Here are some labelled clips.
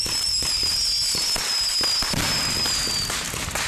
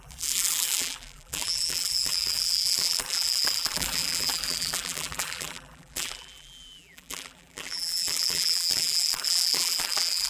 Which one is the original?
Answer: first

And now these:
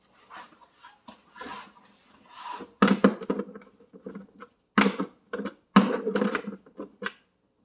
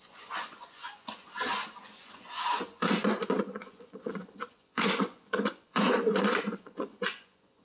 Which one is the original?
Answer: first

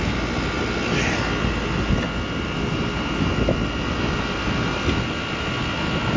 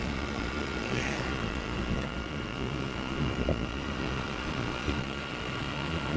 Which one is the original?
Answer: first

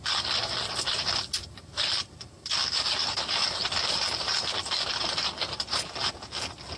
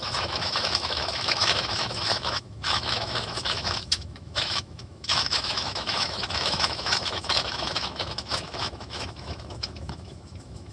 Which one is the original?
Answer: first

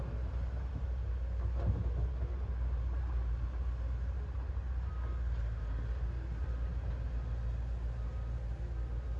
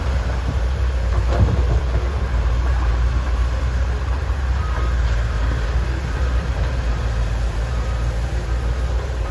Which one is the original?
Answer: first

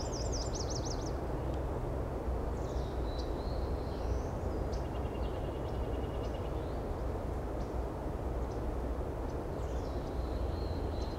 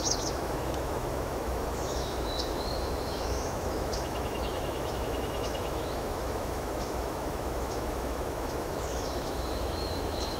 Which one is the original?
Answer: first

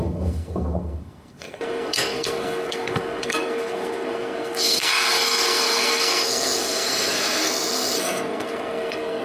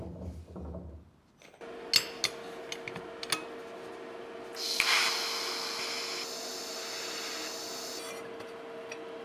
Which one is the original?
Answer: second